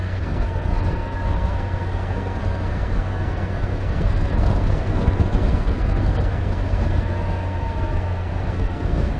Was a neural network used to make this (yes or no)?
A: yes